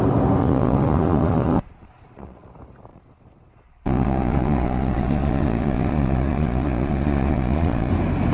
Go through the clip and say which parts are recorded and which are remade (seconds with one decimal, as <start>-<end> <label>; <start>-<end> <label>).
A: 0.0-0.4 recorded; 0.4-2.5 remade; 2.5-2.9 recorded; 2.9-7.9 remade; 7.9-8.3 recorded